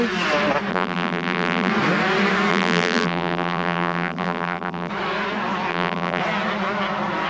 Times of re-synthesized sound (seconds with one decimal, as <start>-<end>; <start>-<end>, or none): 0.7-1.7; 2.5-4.9; 5.7-6.2